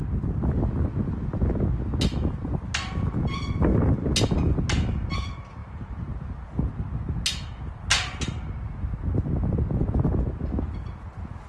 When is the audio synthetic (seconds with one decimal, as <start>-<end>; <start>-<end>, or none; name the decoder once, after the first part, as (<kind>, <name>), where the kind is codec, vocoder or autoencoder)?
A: none